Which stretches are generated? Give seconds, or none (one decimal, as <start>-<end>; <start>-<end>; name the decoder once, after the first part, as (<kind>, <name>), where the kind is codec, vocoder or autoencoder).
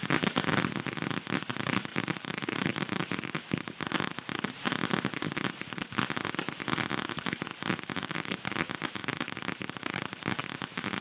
1.9-4.1 (vocoder, BigVGAN v2); 7.5-8.3; 9.0-10.4